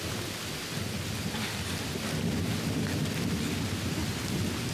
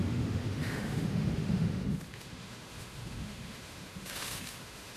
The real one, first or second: first